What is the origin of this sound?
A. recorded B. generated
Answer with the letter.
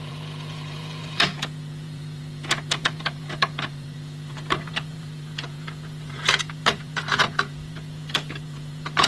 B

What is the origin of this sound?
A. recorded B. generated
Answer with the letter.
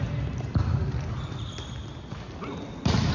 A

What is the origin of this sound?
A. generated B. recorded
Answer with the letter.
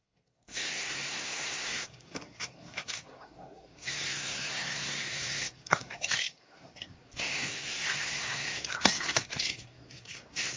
A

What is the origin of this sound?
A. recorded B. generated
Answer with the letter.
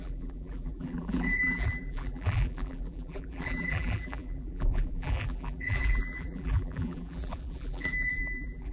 B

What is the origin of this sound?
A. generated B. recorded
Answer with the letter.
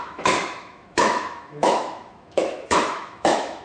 A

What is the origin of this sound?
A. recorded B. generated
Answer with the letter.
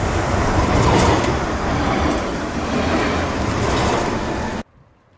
A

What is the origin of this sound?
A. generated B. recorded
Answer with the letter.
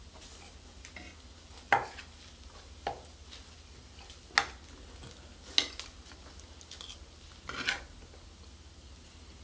B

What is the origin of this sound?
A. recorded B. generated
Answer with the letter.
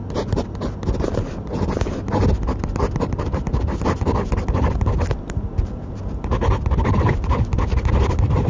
A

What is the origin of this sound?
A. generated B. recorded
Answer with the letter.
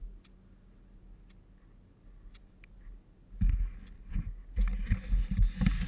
B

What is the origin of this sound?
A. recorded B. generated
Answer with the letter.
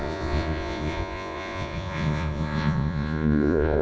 B